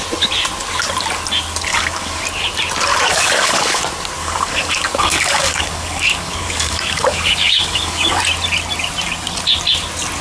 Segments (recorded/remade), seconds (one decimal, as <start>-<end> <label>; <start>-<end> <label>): 0.0-1.7 recorded; 1.7-2.2 remade; 2.2-2.9 recorded; 2.9-3.8 remade; 3.8-4.2 recorded; 4.2-8.2 remade; 8.2-10.2 recorded